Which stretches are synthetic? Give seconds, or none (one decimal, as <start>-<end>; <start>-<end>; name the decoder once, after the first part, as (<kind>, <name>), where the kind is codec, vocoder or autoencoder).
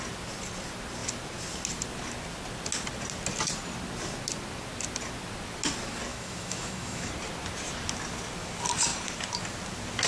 6.1-7.1 (autoencoder, DAC-VAE)